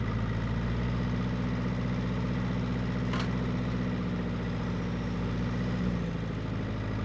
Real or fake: real